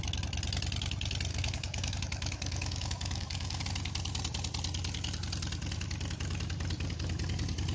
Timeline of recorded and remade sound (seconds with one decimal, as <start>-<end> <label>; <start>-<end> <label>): 0.0-1.3 recorded; 1.3-3.6 remade; 3.6-7.7 recorded